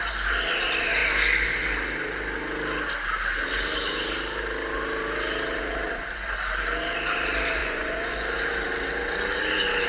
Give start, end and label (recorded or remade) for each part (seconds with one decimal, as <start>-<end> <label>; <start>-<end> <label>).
0.0-7.6 recorded; 7.6-8.3 remade; 8.3-9.9 recorded